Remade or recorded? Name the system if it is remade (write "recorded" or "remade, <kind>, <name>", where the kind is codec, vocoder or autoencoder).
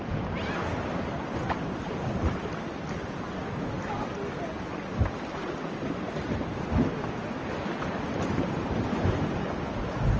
recorded